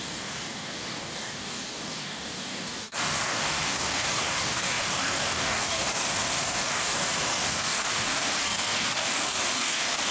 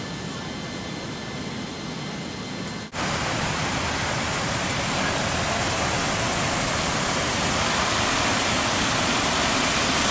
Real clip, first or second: second